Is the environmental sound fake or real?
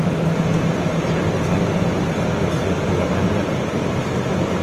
real